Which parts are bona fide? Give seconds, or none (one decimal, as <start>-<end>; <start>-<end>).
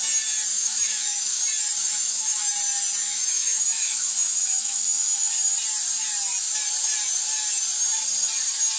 0.0-0.5; 1.4-1.8; 2.5-3.0; 5.3-8.8